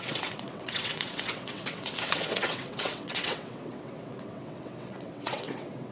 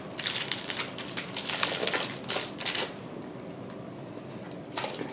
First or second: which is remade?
first